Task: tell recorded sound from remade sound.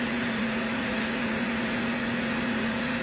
remade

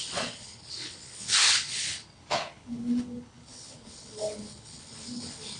remade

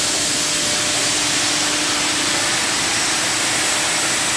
recorded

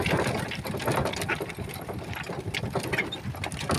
recorded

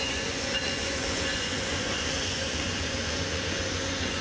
remade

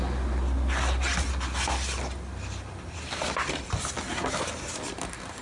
recorded